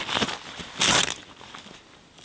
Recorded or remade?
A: recorded